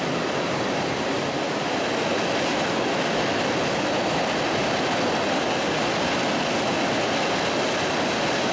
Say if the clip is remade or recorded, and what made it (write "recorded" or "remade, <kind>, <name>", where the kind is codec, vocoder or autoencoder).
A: recorded